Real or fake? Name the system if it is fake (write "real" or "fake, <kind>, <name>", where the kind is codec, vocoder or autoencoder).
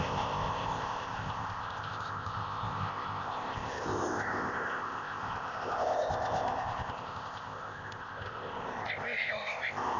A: fake, codec, ZipCodec